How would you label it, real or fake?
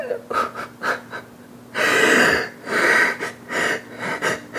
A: real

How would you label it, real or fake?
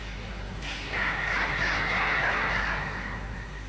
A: fake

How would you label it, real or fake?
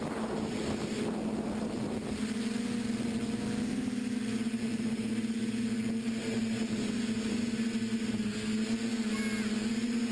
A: real